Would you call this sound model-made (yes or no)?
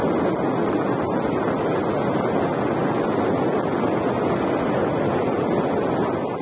no